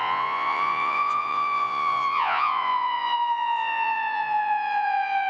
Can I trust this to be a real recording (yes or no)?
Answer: no